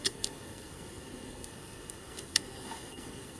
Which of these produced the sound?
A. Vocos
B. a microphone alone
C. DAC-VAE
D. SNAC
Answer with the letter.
D